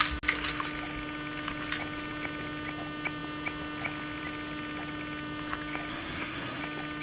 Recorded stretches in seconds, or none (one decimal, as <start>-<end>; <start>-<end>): 0.0-5.9; 6.6-7.0